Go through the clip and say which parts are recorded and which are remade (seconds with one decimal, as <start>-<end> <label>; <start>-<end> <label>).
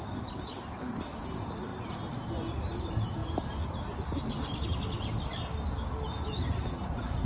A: 0.0-7.2 recorded